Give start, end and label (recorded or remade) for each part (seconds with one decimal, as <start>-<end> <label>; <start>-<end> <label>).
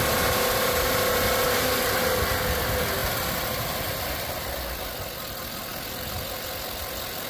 0.0-7.3 recorded